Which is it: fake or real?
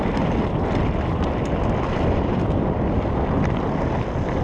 real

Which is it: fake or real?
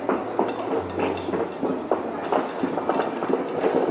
real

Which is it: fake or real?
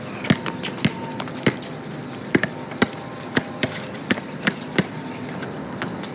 real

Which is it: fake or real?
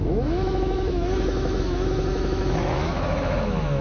fake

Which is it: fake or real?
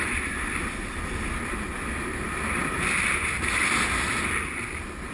fake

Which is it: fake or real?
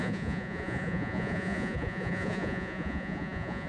fake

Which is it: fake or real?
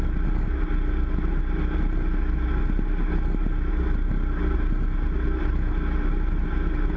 real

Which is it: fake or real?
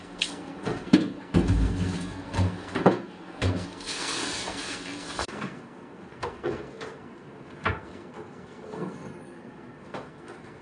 fake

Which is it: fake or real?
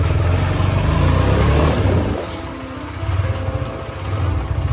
real